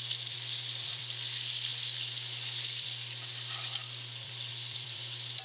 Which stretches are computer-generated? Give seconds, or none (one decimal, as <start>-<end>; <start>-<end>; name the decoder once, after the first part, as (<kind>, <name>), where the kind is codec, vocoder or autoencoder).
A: 0.0-5.4 (vocoder, BigVGAN v2)